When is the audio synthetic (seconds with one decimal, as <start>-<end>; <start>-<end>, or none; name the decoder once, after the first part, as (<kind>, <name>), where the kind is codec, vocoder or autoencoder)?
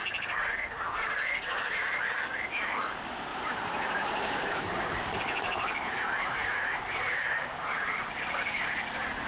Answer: 0.0-2.1 (vocoder, BigVGAN v2); 3.3-7.9